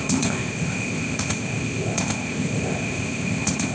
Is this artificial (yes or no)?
yes